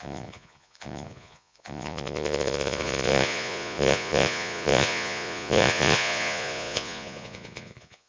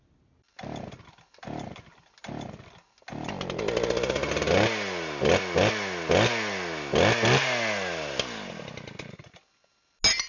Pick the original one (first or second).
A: second